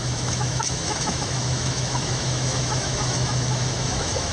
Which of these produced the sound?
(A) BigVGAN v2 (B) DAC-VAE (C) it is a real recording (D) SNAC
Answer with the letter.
B